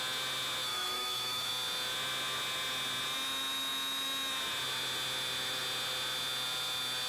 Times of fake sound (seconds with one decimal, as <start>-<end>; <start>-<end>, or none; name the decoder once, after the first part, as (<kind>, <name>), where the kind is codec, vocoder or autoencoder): 0.7-1.5 (autoencoder, DAC-VAE)